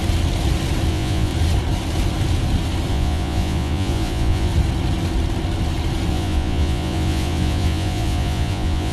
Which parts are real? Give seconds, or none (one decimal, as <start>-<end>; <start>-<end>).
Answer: 0.0-0.9; 1.3-2.9; 4.5-6.1